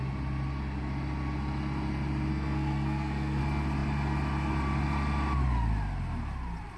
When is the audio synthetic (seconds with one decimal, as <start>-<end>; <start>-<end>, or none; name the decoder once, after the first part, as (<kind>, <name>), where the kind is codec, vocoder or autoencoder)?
2.3-3.4 (codec, SNAC)